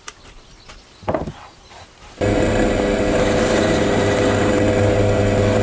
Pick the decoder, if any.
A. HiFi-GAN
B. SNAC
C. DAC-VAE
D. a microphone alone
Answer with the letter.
D